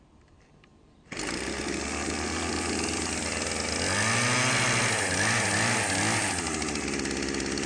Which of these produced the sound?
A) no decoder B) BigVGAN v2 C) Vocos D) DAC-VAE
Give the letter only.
A